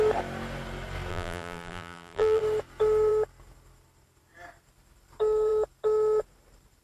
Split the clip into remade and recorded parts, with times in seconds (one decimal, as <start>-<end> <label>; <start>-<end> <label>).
0.0-1.1 recorded; 1.1-2.4 remade; 2.4-6.8 recorded